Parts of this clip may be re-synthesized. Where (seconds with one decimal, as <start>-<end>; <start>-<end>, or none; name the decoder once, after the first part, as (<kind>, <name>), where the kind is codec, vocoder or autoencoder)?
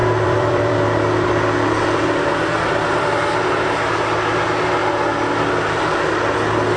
0.0-3.1 (vocoder, BigVGAN v2)